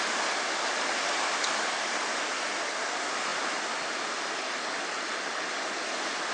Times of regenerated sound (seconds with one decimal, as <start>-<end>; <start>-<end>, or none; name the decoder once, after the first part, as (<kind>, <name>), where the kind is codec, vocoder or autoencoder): none